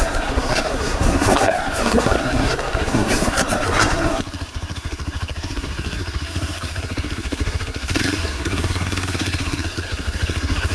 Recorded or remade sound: remade